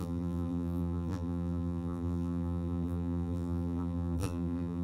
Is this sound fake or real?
fake